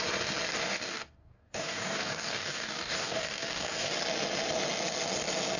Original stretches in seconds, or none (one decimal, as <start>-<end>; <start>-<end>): 0.0-0.5; 3.9-5.6